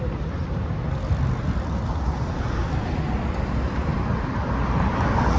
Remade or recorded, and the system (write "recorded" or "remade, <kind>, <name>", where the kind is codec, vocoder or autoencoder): recorded